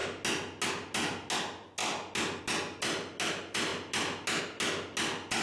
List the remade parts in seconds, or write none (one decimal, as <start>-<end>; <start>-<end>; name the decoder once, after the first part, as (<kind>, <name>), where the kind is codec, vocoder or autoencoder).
none